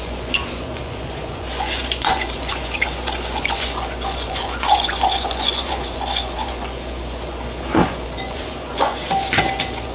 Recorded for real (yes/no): no